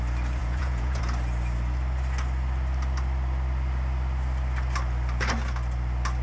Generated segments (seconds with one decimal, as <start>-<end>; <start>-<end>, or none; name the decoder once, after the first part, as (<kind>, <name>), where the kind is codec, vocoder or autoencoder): 0.4-1.0 (vocoder, Vocos)